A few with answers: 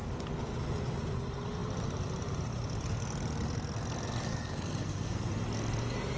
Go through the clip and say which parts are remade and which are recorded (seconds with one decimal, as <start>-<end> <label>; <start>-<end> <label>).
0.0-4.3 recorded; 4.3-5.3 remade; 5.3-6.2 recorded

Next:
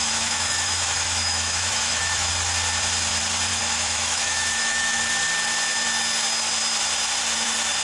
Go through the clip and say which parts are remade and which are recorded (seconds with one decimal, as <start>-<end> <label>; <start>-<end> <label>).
0.0-2.3 remade; 2.3-3.5 recorded; 3.5-5.0 remade; 5.0-7.8 recorded

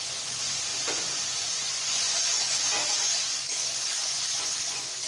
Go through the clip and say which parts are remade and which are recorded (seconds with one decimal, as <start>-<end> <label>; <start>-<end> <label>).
0.0-5.1 remade